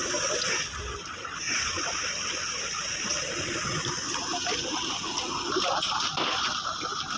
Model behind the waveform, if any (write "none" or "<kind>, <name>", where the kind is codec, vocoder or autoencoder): none